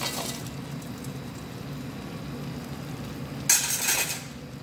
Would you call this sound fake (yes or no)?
no